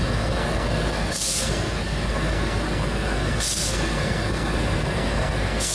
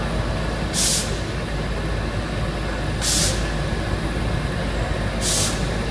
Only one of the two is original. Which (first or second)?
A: second